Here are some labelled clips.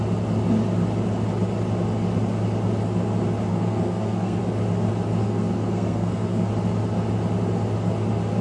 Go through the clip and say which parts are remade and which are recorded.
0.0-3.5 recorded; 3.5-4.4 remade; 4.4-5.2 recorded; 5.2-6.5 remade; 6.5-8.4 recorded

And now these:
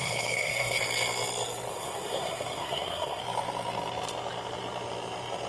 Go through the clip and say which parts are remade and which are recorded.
0.0-0.8 remade; 0.8-1.7 recorded; 1.7-3.2 remade; 3.2-5.5 recorded

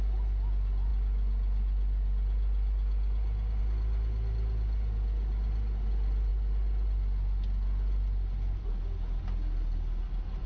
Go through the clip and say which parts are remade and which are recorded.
0.0-10.5 recorded

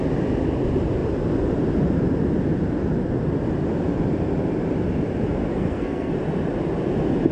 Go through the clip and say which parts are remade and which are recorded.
0.0-5.5 recorded; 5.5-6.1 remade; 6.1-7.3 recorded

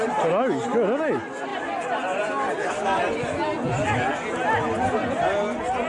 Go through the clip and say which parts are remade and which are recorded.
0.0-5.9 recorded

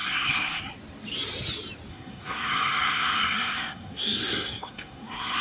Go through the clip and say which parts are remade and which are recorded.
0.0-0.6 remade; 0.6-1.9 recorded; 1.9-5.4 remade

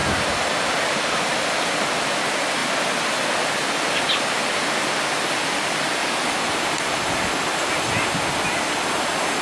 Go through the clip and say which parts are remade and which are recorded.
0.0-9.4 recorded